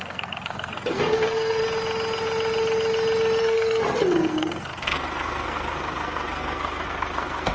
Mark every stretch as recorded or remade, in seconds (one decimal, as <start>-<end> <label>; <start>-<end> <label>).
0.0-1.6 remade; 1.6-3.4 recorded; 3.4-7.5 remade